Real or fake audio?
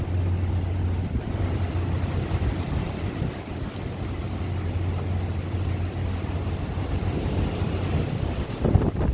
real